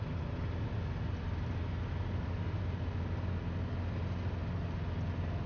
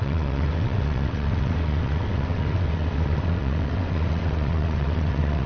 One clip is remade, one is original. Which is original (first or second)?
first